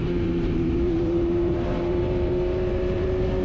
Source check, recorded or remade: remade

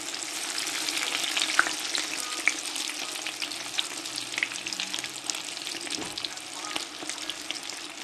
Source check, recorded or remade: recorded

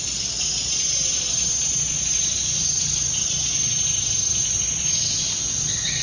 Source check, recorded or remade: recorded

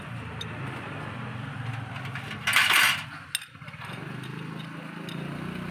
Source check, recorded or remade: recorded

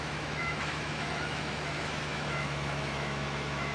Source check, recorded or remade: remade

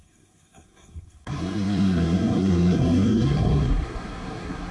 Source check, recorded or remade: remade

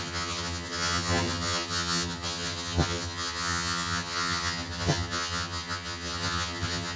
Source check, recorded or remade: remade